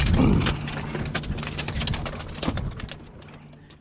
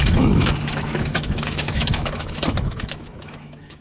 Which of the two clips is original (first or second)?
first